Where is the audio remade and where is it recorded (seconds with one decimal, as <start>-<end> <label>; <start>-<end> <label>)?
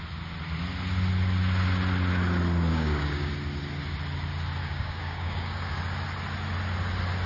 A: 0.0-2.7 recorded; 2.7-3.3 remade; 3.3-4.6 recorded; 4.6-5.8 remade; 5.8-7.3 recorded